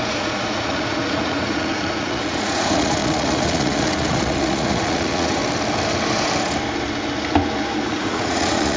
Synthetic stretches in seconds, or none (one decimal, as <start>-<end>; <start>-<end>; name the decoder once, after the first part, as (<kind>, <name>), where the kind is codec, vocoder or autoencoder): 0.0-5.4 (vocoder, Vocos); 7.9-8.8